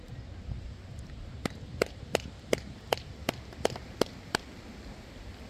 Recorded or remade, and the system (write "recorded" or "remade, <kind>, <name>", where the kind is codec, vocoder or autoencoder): recorded